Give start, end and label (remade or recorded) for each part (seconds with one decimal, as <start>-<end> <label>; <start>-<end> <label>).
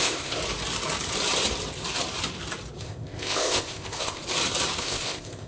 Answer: 0.0-0.4 remade; 0.4-2.8 recorded; 2.8-4.2 remade; 4.2-4.8 recorded; 4.8-5.5 remade